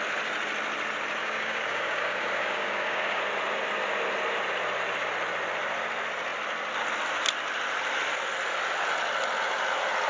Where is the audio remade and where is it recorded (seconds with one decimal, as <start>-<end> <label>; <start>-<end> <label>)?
0.0-1.2 recorded; 1.2-3.2 remade; 3.2-10.1 recorded